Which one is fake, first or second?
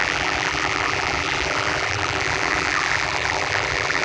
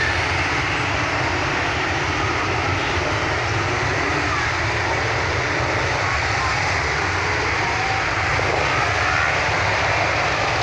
first